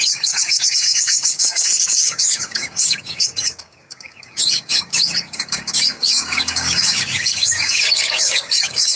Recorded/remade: remade